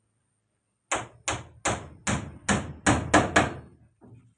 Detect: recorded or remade recorded